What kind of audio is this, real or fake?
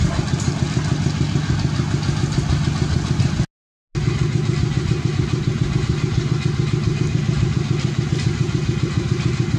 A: real